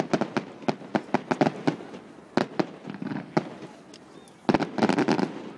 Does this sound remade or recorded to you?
recorded